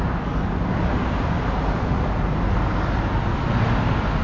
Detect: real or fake real